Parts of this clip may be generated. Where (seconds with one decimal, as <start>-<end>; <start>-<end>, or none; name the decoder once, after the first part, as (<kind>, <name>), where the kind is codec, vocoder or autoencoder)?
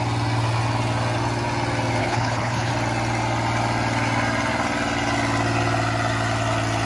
2.0-2.7 (codec, HILCodec)